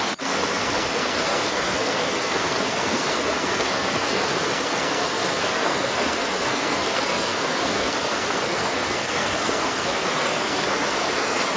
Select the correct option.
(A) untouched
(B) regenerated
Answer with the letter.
B